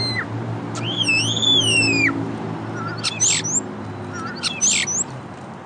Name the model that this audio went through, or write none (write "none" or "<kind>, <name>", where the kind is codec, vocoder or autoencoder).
none